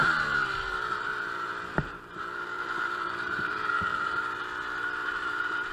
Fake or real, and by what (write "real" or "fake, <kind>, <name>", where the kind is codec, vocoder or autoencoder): fake, vocoder, BigVGAN v2